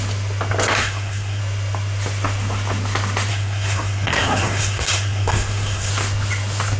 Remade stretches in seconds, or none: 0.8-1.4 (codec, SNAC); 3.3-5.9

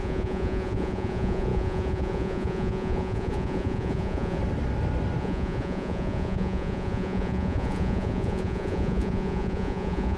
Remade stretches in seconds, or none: 0.0-4.4 (vocoder, Vocos); 5.2-10.2

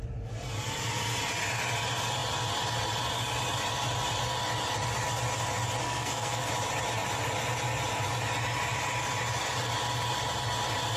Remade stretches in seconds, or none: 5.8-6.5 (codec, SNAC)

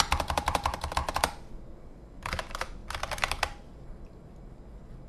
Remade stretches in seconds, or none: 0.0-1.0 (vocoder, BigVGAN v2); 1.5-5.1

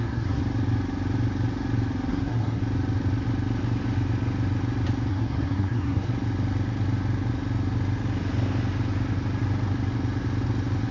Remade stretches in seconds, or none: 0.0-0.4 (codec, SNAC); 2.1-2.6; 5.1-6.1

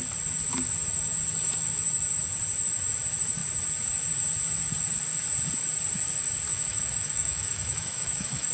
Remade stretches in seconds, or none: 6.5-8.5 (autoencoder, DAC-VAE)

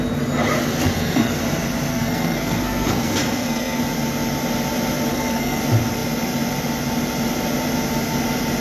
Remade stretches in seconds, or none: 0.8-1.4 (codec, SNAC); 1.9-3.8; 5.1-5.6

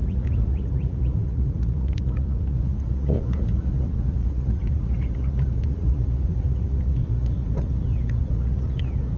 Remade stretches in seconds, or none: 0.0-9.2 (vocoder, Vocos)